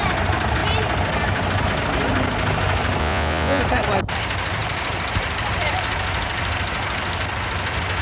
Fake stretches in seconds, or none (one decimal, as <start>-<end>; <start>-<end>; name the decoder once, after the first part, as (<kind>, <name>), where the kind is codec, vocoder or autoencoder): 3.0-3.6 (vocoder, Vocos)